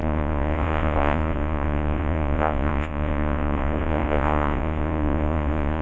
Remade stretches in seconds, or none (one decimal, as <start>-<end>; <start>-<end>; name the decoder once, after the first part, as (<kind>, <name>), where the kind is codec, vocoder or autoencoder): 0.0-5.8 (vocoder, Vocos)